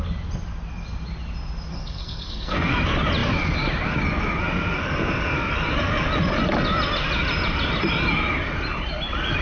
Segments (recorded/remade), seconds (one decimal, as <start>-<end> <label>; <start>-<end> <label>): 0.0-1.7 recorded; 1.7-2.7 remade; 2.7-9.4 recorded